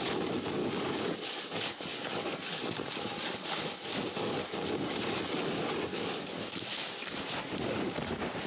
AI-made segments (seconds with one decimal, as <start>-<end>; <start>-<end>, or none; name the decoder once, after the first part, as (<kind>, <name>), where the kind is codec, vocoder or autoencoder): 0.6-3.4 (codec, DAC); 5.9-6.6